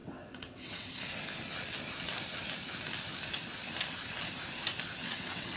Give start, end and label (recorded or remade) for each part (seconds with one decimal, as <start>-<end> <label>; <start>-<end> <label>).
0.0-0.9 remade; 0.9-5.0 recorded; 5.0-5.6 remade